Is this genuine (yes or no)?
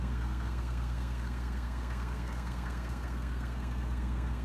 no